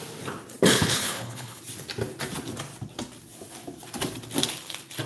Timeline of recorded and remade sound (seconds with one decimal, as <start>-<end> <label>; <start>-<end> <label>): 0.0-0.7 recorded; 0.7-1.6 remade; 1.6-5.1 recorded